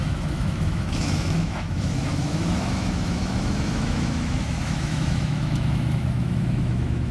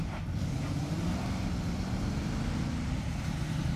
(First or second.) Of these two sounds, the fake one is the first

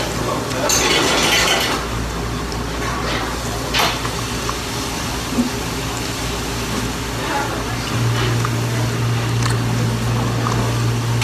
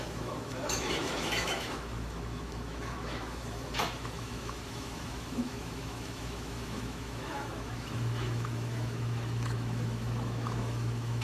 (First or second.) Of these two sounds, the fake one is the second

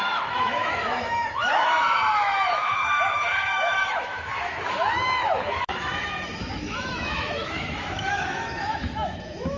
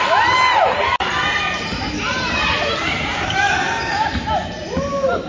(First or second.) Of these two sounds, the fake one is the first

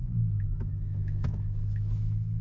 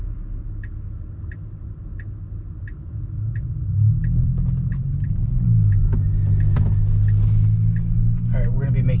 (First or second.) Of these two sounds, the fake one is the first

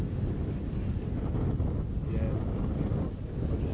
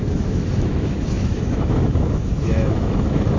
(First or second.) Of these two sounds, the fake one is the second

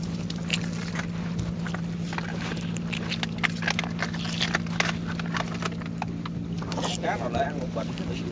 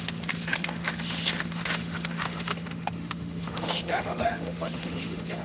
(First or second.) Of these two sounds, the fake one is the second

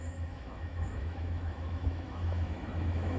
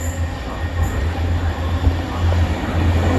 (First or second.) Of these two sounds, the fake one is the first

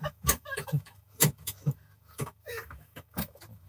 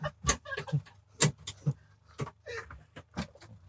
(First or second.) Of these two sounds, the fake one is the first